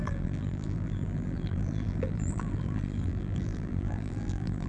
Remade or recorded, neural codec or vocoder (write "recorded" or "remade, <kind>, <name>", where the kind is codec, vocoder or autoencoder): remade, vocoder, BigVGAN v2